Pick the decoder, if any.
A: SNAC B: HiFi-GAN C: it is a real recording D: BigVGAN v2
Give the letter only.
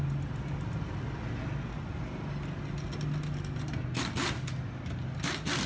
C